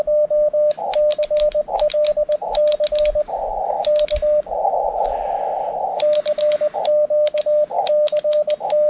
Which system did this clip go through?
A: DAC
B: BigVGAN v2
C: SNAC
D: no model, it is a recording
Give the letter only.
D